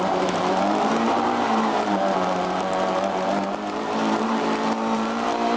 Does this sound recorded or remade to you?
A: remade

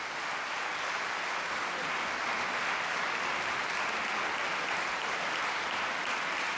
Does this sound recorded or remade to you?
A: recorded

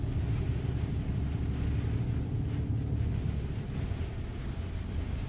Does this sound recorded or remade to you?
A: recorded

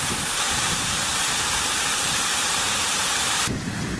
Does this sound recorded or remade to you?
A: remade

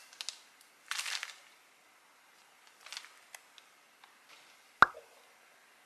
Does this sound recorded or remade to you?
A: recorded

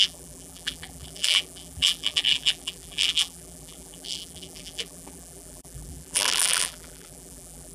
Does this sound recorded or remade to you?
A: remade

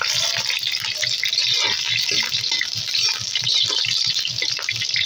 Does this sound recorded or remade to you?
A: recorded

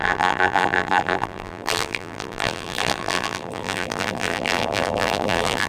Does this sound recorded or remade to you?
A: remade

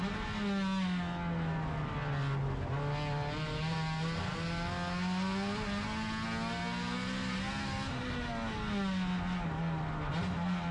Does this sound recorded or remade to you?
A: recorded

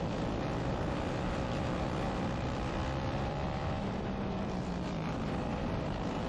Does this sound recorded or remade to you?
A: remade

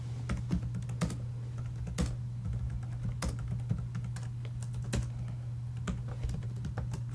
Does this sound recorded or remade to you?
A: recorded